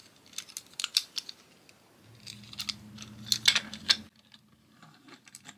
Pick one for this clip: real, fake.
real